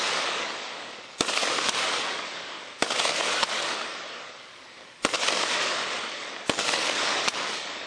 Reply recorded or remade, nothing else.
remade